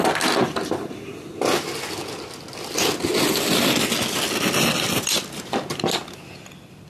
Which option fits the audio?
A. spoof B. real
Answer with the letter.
B